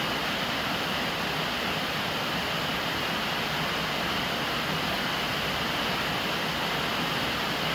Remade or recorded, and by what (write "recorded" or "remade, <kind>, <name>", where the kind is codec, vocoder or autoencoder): recorded